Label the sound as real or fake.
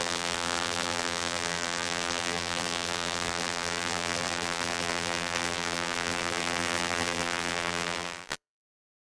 fake